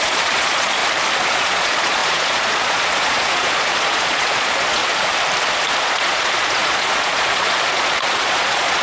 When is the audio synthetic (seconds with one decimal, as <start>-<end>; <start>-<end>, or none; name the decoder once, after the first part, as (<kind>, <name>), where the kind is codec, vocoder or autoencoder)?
0.0-0.8 (vocoder, Vocos); 1.3-4.8; 5.8-8.8